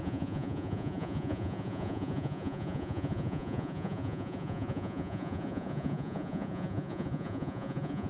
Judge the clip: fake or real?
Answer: fake